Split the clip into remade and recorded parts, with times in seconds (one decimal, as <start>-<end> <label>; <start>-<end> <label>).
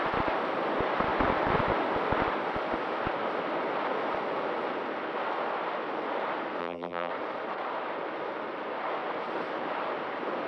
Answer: 0.0-6.6 recorded; 6.6-7.1 remade; 7.1-10.5 recorded